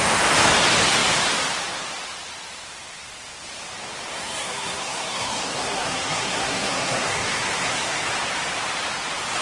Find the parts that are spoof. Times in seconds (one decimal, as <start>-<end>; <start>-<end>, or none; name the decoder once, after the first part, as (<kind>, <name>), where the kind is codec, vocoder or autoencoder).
4.1-8.0 (codec, SNAC)